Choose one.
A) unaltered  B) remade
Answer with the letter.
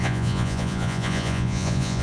B